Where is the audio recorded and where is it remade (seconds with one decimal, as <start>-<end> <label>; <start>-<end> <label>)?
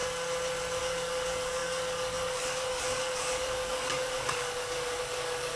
0.0-0.8 recorded; 0.8-5.6 remade